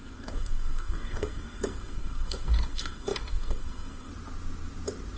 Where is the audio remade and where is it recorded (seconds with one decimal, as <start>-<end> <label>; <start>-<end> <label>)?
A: 0.0-4.1 remade; 4.1-5.2 recorded